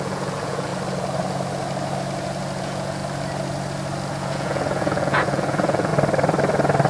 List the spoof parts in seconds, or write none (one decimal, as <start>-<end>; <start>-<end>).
0.0-0.7; 2.6-3.0; 4.1-5.9